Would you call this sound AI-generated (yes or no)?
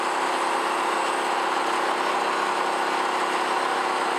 no